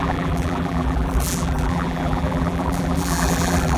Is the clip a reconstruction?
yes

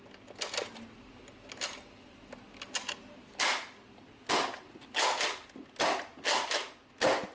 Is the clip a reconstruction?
no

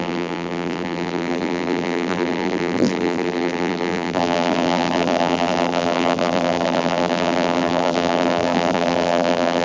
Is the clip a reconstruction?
yes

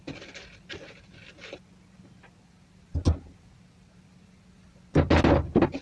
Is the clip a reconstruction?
no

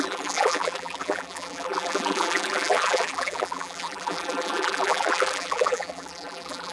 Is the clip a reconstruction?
yes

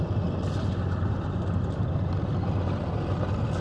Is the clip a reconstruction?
no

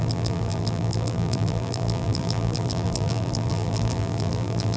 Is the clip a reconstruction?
yes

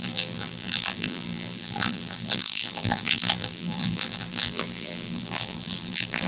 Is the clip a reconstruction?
yes